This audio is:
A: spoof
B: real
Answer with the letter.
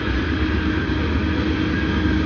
B